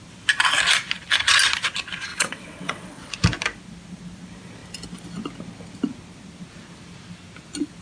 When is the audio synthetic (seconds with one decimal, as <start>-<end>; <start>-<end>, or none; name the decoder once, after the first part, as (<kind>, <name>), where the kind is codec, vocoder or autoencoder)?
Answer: 2.1-3.1 (vocoder, WaveNeXt)